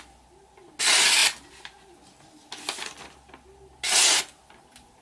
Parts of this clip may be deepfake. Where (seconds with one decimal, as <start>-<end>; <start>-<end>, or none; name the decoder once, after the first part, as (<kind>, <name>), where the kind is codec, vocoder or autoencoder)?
none